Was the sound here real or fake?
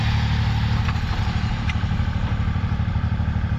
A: fake